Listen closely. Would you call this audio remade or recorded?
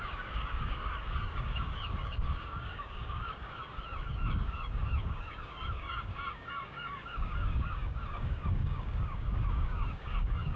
remade